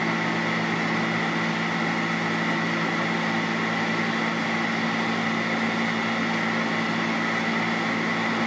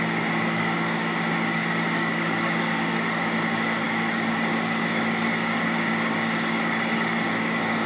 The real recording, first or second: first